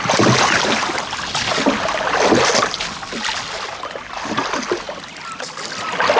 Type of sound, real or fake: real